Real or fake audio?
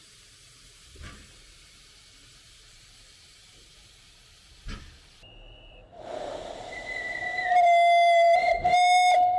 fake